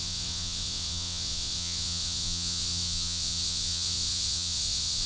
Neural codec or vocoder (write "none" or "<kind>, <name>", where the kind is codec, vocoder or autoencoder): vocoder, WaveNeXt